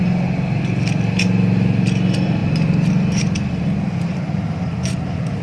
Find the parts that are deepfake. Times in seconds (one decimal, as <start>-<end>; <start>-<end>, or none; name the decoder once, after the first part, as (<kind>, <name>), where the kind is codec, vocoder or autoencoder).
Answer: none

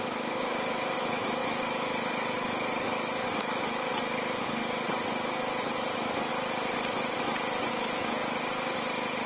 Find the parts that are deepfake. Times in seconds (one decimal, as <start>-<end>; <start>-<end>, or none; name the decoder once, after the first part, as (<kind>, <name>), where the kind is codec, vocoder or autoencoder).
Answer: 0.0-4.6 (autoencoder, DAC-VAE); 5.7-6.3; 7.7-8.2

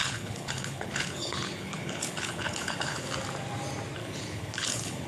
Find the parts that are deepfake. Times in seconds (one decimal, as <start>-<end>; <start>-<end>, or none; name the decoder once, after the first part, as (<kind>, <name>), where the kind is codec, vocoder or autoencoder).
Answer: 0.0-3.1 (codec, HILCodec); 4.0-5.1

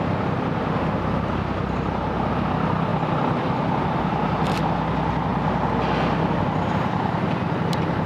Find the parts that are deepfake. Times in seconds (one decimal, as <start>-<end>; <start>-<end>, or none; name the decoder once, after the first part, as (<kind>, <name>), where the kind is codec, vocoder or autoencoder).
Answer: none

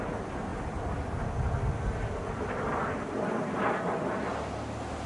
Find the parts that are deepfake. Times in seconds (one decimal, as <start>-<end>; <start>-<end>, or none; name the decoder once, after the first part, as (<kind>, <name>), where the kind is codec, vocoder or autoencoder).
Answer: none

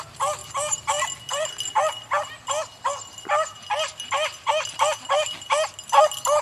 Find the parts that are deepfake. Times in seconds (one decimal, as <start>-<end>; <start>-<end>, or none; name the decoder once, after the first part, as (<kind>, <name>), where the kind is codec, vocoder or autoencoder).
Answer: none